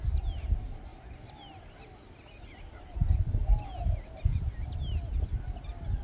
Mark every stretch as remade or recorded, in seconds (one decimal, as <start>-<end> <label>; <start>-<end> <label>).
0.0-6.0 recorded

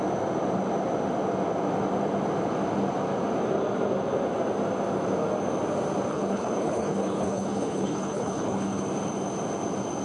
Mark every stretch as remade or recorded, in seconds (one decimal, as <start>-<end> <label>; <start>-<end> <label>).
0.0-6.1 recorded; 6.1-8.8 remade; 8.8-10.0 recorded

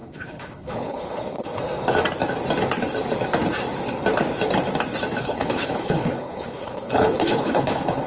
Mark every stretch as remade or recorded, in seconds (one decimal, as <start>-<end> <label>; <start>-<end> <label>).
0.0-1.6 remade; 1.6-5.2 recorded; 5.2-8.1 remade

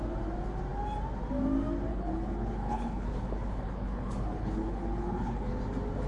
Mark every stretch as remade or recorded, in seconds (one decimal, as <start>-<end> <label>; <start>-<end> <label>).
0.0-1.9 recorded; 1.9-5.5 remade; 5.5-6.1 recorded

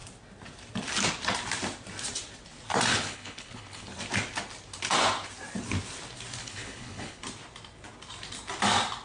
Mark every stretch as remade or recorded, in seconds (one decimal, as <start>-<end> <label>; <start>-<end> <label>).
0.0-2.9 recorded; 2.9-3.9 remade; 3.9-6.4 recorded; 6.4-7.2 remade; 7.2-9.0 recorded

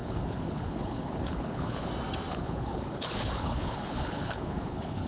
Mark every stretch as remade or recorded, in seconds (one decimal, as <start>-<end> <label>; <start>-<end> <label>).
0.0-1.9 remade; 1.9-2.3 recorded; 2.3-5.1 remade

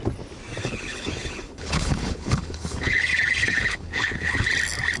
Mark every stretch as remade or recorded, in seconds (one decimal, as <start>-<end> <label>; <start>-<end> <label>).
0.0-0.6 recorded; 0.6-3.0 remade; 3.0-3.4 recorded; 3.4-4.5 remade; 4.5-5.0 recorded

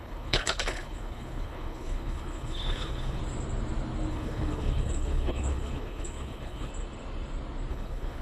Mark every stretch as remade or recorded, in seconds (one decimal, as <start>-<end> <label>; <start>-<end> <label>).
0.0-3.2 remade; 3.2-4.1 recorded; 4.1-6.7 remade; 6.7-7.7 recorded; 7.7-8.2 remade